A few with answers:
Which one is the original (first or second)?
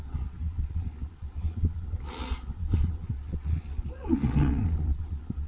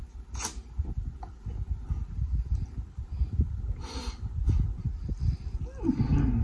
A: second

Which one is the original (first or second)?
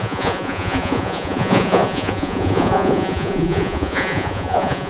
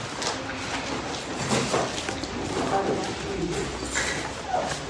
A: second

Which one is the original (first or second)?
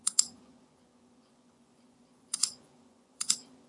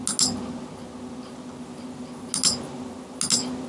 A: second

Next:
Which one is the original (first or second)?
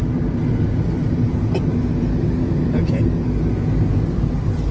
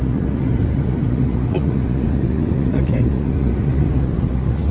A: first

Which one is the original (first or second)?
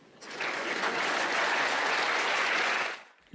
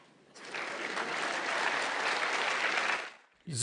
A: second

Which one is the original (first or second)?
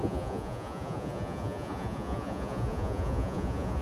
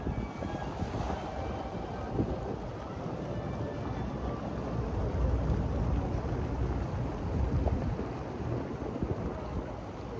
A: second